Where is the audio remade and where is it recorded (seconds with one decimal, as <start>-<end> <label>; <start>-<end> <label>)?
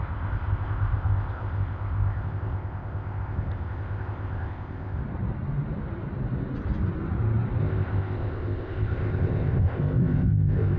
0.0-5.0 remade; 5.0-7.6 recorded; 7.6-10.8 remade